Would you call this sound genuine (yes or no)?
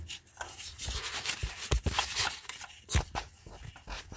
yes